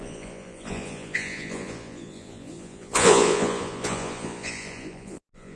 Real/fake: fake